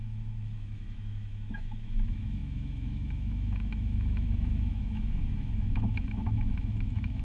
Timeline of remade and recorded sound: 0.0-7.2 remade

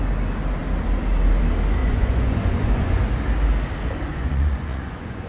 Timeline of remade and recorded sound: 0.0-1.8 recorded; 1.8-3.0 remade; 3.0-4.1 recorded; 4.1-5.3 remade

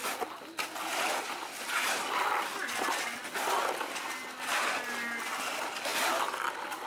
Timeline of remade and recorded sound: 0.0-6.9 recorded

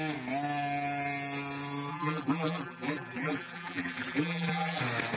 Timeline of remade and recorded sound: 0.0-1.9 recorded; 1.9-4.8 remade; 4.8-5.2 recorded

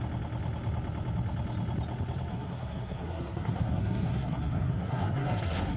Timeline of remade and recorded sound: 0.0-2.3 recorded; 2.3-5.8 remade

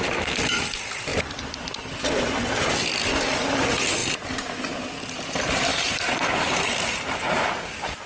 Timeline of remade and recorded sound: 0.0-5.7 recorded; 5.7-7.5 remade; 7.5-8.1 recorded